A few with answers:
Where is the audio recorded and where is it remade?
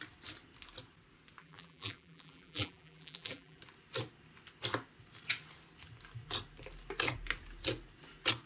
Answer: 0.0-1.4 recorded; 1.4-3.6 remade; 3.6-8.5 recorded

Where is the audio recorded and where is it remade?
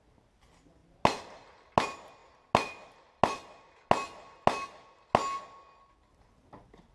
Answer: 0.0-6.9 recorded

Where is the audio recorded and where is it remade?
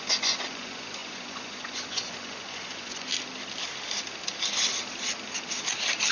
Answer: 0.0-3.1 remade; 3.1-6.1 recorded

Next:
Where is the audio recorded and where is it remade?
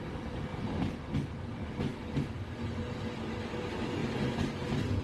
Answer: 0.0-0.5 recorded; 0.5-1.0 remade; 1.0-5.0 recorded